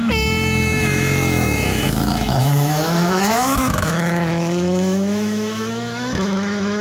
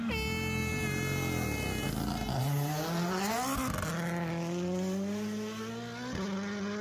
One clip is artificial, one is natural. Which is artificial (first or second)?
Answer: first